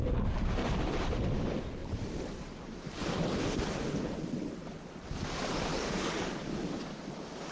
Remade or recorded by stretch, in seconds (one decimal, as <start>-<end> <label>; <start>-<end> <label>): 0.0-5.7 recorded; 5.7-6.6 remade; 6.6-7.5 recorded